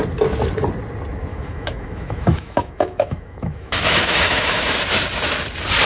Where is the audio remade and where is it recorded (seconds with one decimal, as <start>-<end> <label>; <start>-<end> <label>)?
0.0-1.3 recorded; 1.3-4.8 remade; 4.8-5.8 recorded